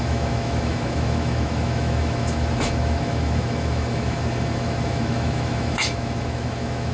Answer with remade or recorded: remade